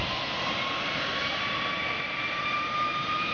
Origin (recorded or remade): remade